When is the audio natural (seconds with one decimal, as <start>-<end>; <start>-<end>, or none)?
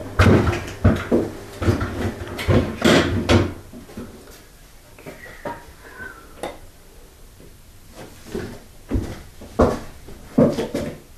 0.0-11.2